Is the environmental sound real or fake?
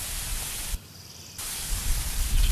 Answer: real